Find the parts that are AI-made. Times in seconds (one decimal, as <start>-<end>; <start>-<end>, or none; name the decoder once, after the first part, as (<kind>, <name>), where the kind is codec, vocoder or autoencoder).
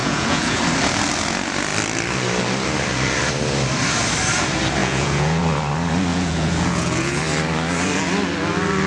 0.0-0.6 (vocoder, Vocos); 4.8-5.4; 6.1-7.2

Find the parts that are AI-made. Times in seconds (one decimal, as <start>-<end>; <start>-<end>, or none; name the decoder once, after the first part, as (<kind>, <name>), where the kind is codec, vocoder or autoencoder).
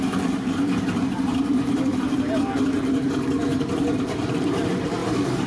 0.0-1.9 (vocoder, BigVGAN v2); 3.6-5.0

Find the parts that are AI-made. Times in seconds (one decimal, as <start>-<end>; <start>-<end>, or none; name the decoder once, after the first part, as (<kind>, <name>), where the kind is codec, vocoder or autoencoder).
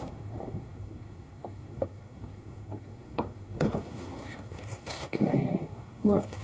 0.0-6.4 (codec, SNAC)